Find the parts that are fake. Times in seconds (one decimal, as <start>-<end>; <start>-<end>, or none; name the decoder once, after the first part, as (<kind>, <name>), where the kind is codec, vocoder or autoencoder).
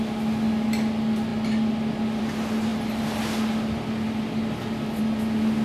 none